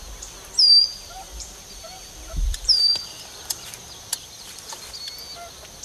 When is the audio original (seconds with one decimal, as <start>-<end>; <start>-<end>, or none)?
0.0-0.9; 3.7-4.2; 5.1-5.8